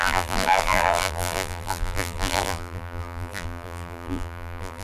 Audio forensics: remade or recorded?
remade